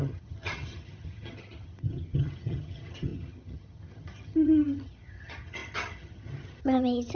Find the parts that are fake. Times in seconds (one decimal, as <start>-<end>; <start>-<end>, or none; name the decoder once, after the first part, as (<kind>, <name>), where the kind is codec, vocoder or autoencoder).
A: 0.0-7.2 (vocoder, HiFi-GAN)